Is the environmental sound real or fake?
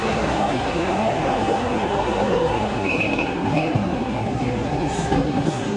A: fake